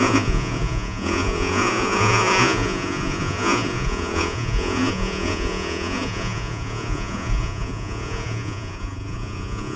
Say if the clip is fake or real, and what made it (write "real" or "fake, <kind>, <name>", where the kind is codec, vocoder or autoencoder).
fake, vocoder, Vocos